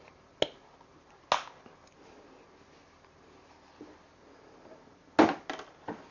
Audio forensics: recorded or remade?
recorded